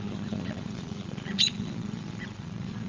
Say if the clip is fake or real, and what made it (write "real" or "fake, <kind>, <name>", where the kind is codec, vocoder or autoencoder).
fake, vocoder, Vocos